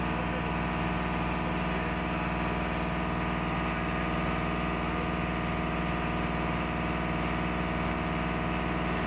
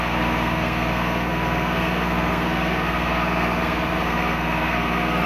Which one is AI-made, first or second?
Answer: second